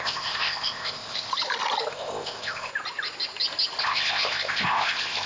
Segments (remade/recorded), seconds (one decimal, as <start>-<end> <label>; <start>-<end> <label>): 0.0-1.3 remade; 1.3-1.9 recorded; 1.9-2.7 remade; 2.7-3.8 recorded; 3.8-5.3 remade